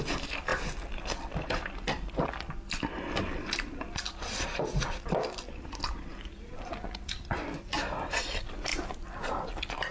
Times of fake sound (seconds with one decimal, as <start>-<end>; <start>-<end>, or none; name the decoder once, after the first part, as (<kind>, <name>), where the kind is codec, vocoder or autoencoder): 0.0-0.5 (vocoder, BigVGAN v2); 3.2-9.9